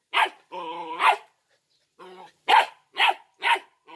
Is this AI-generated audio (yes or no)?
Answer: no